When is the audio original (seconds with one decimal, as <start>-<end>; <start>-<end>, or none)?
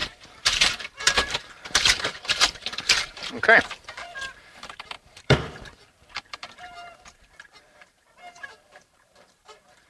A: none